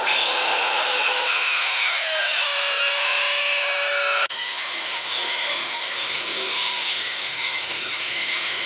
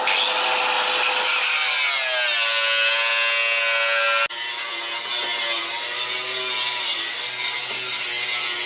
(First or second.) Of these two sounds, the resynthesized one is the first